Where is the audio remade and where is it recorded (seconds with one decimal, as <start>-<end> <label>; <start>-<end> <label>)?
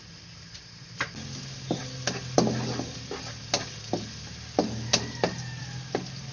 0.0-6.3 recorded